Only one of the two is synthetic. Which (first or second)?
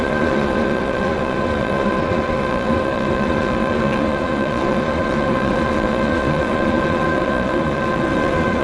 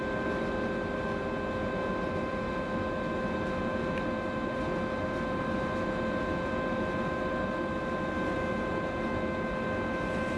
first